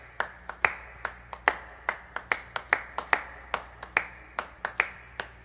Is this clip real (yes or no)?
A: yes